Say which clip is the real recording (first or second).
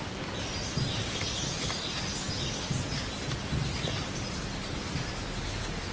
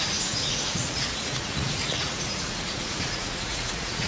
first